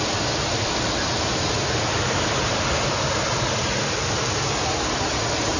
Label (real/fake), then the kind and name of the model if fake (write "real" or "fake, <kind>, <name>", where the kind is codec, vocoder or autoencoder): real